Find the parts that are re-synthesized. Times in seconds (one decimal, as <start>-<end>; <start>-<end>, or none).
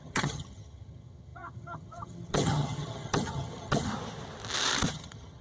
0.0-3.9; 4.9-5.4